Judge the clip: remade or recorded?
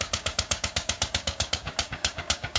remade